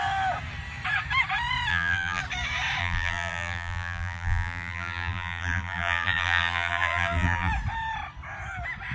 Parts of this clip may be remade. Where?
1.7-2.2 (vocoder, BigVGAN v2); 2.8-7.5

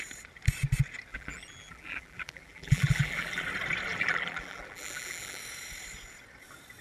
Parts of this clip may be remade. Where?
1.1-3.4 (vocoder, BigVGAN v2); 3.9-5.4

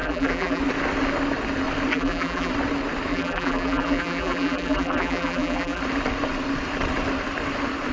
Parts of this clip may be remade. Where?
0.0-0.6 (vocoder, BigVGAN v2); 1.9-2.5; 3.1-5.8

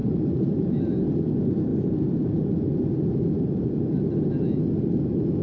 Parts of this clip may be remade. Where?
0.0-0.8 (vocoder, BigVGAN v2); 1.7-4.2

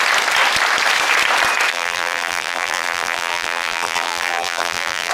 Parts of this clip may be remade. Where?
1.7-5.1 (vocoder, BigVGAN v2)

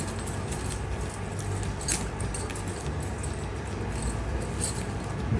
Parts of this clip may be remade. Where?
none

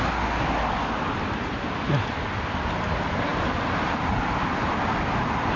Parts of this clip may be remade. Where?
3.3-4.2 (vocoder, BigVGAN v2)